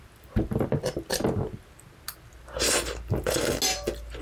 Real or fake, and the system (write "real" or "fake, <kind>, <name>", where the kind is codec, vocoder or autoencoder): real